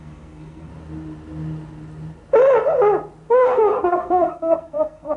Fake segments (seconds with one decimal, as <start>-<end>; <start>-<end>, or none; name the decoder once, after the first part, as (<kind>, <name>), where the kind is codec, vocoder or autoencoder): 0.0-0.7 (codec, SNAC); 3.3-5.2